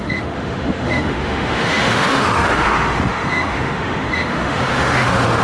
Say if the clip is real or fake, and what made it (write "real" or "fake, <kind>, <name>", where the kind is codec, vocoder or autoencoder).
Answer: fake, autoencoder, DAC-VAE